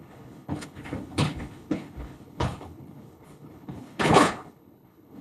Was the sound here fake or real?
fake